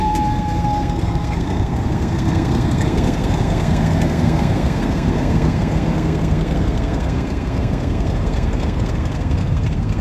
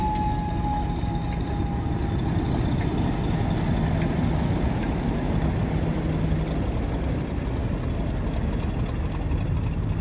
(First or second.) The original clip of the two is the second